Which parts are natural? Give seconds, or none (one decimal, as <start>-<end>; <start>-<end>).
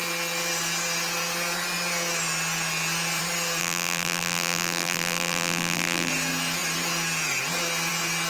0.0-3.6; 6.1-8.3